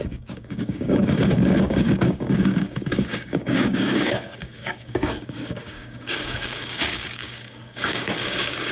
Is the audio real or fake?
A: fake